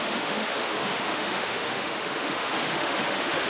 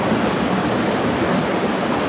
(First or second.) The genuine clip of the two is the second